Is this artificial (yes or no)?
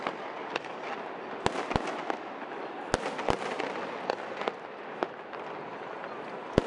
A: no